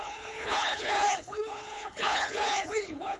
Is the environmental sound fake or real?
fake